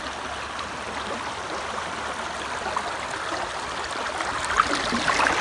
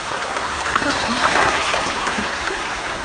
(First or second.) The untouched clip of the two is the first